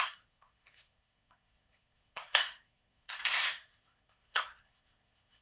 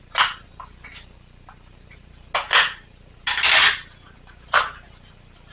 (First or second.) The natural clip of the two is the second